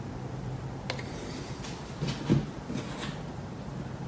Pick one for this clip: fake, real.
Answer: real